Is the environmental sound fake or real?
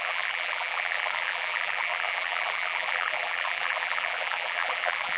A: fake